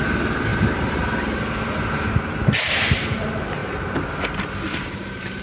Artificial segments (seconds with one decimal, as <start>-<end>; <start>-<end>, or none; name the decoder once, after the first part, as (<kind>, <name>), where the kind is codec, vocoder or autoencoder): 0.0-3.6 (vocoder, BigVGAN v2); 4.5-5.4